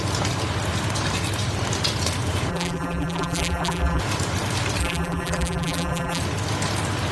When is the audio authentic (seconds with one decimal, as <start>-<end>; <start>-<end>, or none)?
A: 0.0-2.5; 4.0-4.8; 6.2-7.1